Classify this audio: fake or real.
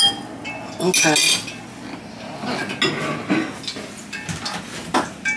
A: real